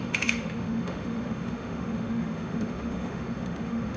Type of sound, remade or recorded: remade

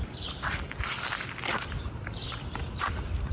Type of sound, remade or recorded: recorded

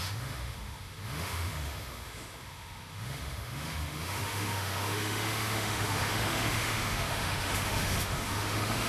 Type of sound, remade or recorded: remade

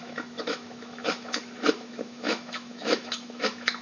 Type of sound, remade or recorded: remade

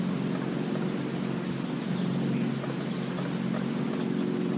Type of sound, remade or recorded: recorded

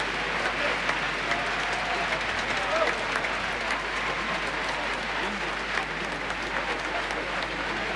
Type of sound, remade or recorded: recorded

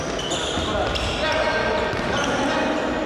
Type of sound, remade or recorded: recorded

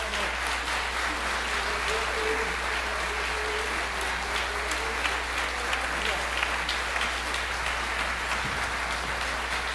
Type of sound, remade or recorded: recorded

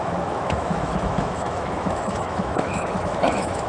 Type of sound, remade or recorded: remade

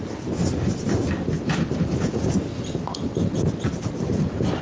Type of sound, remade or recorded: recorded